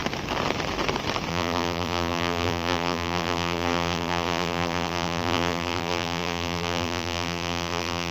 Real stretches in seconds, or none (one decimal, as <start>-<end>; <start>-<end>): 0.0-1.3